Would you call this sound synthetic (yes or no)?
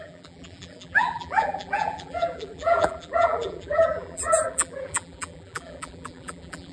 yes